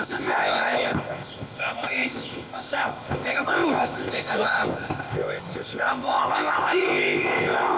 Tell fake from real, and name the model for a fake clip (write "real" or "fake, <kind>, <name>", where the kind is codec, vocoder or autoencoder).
fake, codec, ZipCodec